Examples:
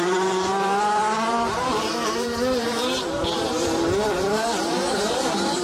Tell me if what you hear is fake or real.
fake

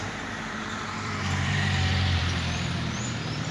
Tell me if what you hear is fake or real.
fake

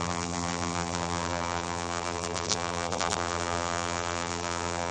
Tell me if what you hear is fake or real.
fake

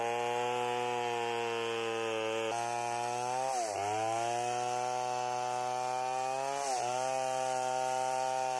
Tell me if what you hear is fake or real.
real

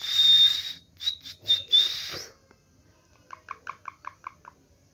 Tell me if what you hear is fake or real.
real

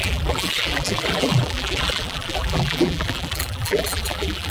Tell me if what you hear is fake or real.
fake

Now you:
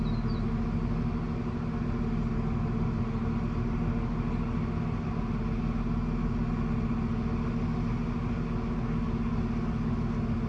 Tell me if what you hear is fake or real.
real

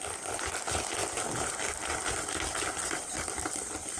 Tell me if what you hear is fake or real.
fake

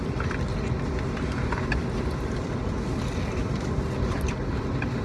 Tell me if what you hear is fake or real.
fake